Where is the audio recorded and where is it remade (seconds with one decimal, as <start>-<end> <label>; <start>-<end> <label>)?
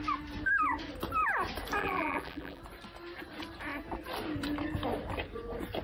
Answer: 0.0-1.8 recorded; 1.8-2.6 remade; 2.6-5.8 recorded